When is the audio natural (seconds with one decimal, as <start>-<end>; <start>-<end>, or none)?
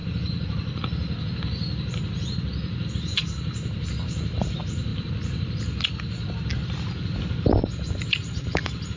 0.0-2.9; 4.9-8.1